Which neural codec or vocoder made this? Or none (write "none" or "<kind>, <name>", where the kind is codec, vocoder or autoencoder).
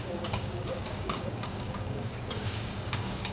codec, DAC